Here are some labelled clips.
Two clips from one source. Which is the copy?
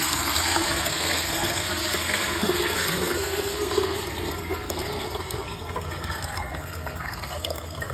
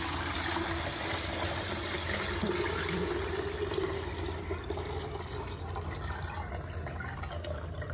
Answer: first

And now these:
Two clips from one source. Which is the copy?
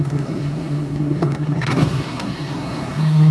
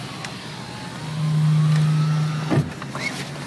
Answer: first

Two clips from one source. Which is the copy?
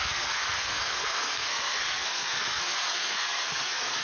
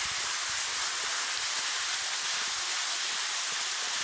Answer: first